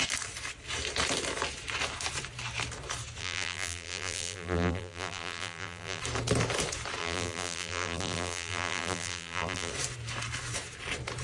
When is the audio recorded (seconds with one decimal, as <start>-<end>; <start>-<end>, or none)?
0.0-3.2; 6.0-7.0; 9.7-11.2